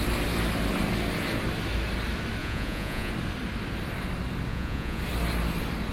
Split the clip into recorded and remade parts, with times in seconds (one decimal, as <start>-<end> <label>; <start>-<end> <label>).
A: 0.0-2.4 recorded; 2.4-3.1 remade; 3.1-4.5 recorded; 4.5-5.0 remade; 5.0-5.9 recorded